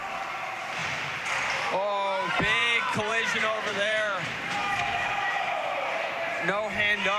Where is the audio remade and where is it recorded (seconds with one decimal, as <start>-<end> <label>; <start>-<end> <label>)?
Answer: 0.0-2.6 recorded; 2.6-6.4 remade; 6.4-7.2 recorded